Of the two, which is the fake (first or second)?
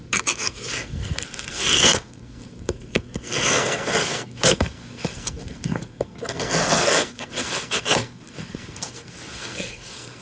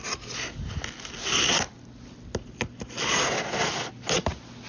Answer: first